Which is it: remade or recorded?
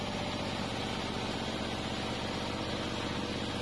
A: recorded